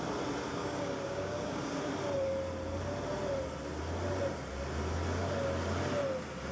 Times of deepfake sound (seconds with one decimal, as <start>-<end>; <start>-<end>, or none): 0.6-1.8